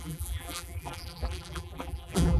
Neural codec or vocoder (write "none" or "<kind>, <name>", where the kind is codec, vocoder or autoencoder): vocoder, BigVGAN v2